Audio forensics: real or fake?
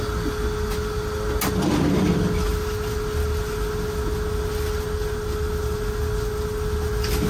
real